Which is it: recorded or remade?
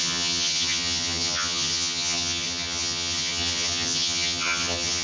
remade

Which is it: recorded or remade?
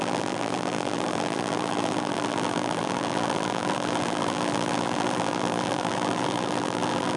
remade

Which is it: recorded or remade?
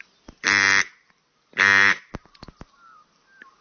recorded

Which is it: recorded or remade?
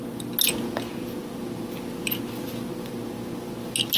recorded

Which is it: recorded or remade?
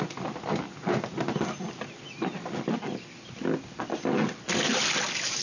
recorded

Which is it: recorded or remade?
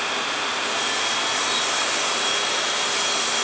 recorded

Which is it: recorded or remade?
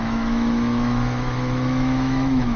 remade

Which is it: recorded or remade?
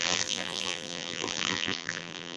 remade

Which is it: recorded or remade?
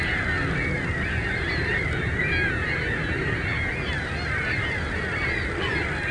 recorded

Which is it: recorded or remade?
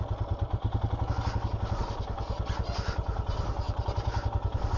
recorded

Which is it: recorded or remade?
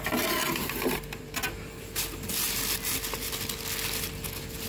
recorded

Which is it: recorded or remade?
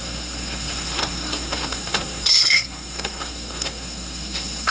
remade